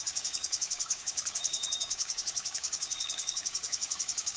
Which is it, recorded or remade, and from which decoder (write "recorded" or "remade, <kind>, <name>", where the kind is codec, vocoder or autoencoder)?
remade, codec, DAC